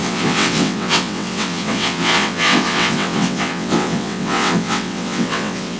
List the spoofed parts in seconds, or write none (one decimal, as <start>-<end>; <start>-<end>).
0.0-5.8